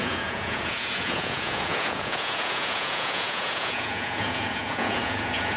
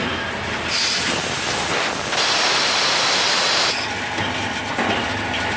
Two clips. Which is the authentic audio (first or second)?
second